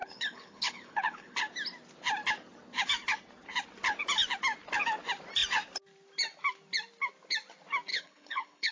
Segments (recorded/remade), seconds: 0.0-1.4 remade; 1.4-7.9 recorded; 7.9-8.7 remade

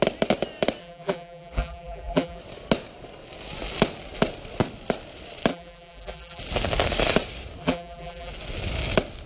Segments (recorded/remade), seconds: 0.0-0.8 recorded; 0.8-2.4 remade; 2.4-5.5 recorded; 5.5-6.4 remade; 6.4-7.6 recorded; 7.6-8.3 remade; 8.3-9.3 recorded

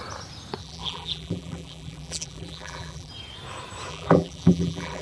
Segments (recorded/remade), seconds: 0.0-0.6 recorded; 0.6-3.1 remade; 3.1-3.9 recorded; 3.9-5.0 remade